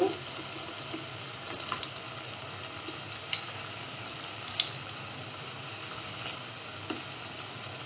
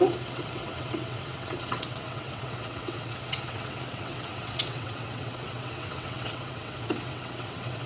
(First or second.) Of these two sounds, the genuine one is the first